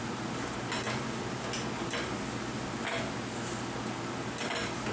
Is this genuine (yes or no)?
yes